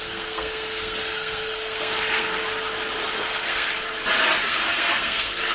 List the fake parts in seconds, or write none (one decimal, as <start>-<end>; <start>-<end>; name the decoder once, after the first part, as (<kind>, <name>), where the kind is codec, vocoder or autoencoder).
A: 0.0-2.4 (codec, SNAC); 3.1-3.7; 4.4-5.5